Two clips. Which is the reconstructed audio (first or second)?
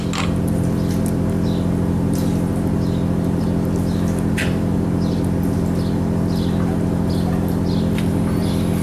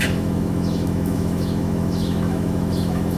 second